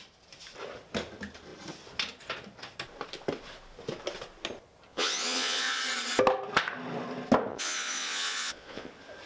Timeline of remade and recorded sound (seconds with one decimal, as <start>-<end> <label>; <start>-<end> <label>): 0.0-4.9 recorded; 4.9-5.8 remade; 5.8-7.5 recorded; 7.5-8.9 remade; 8.9-9.3 recorded